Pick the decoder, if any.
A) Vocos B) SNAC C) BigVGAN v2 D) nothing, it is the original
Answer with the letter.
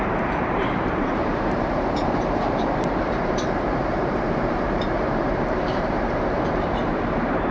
C